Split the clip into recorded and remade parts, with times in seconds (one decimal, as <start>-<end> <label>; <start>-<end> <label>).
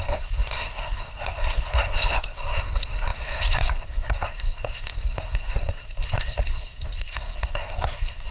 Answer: 0.0-8.3 remade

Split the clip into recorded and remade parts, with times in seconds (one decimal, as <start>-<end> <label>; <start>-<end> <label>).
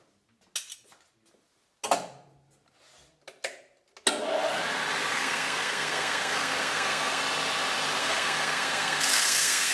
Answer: 0.0-5.1 recorded; 5.1-7.2 remade; 7.2-8.0 recorded; 8.0-9.7 remade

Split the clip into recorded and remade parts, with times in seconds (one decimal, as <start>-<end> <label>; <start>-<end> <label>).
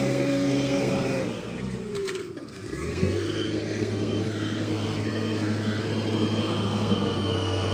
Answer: 0.0-5.9 remade; 5.9-6.4 recorded; 6.4-7.7 remade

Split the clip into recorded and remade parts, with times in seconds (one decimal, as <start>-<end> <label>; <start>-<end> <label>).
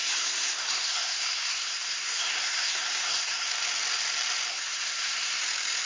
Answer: 0.0-3.5 remade; 3.5-4.5 recorded; 4.5-5.4 remade; 5.4-5.9 recorded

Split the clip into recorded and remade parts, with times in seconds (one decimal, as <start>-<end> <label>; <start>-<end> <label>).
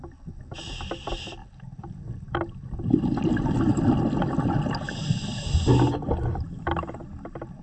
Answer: 0.0-7.6 recorded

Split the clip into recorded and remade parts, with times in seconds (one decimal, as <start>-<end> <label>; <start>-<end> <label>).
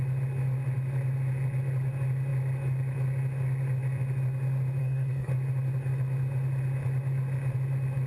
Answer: 0.0-4.8 recorded; 4.8-5.3 remade; 5.3-8.1 recorded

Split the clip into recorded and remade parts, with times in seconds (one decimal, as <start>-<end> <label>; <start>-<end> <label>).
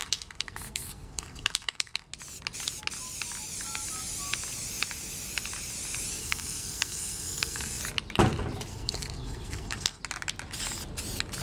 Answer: 0.0-2.1 remade; 2.1-6.2 recorded; 6.2-7.8 remade; 7.8-8.7 recorded; 8.7-10.0 remade; 10.0-11.4 recorded